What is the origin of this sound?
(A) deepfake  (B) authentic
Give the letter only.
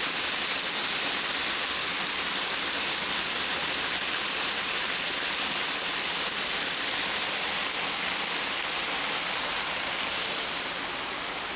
B